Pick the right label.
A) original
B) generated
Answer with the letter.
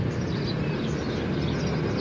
A